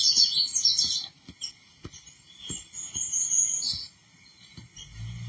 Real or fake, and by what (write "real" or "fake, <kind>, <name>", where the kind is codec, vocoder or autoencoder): real